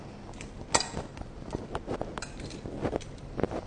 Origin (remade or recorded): recorded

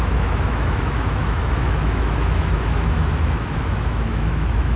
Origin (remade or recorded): remade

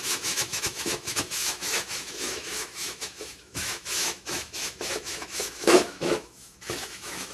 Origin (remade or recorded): remade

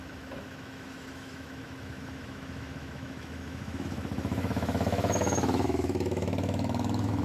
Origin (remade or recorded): remade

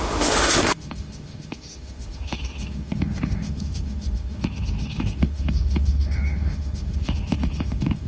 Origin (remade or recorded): remade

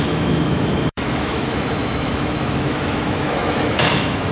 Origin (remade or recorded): remade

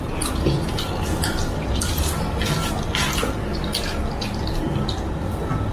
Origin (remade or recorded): recorded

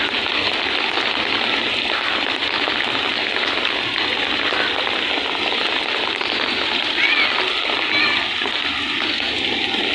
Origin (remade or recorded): recorded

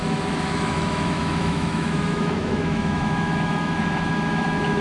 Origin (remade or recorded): remade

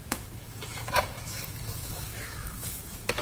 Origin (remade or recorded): remade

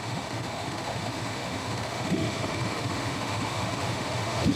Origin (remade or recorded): remade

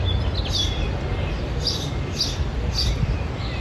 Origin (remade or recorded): recorded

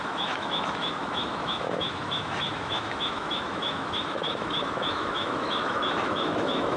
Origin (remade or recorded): remade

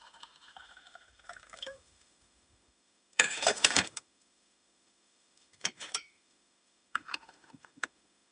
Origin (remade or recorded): remade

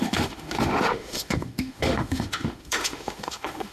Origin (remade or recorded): remade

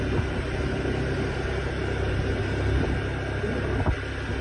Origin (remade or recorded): recorded